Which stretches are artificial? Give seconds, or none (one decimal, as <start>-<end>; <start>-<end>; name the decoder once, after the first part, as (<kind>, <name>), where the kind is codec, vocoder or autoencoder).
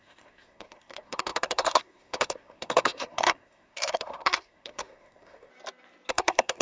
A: 0.0-5.5 (codec, SNAC); 6.1-6.6